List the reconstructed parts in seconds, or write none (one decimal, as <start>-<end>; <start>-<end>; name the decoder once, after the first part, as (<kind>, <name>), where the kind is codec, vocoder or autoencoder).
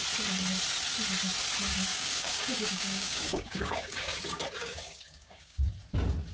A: 1.9-5.7 (codec, DAC)